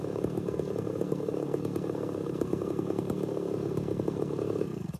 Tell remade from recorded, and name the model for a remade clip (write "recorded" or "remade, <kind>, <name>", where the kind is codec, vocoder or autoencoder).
remade, codec, SNAC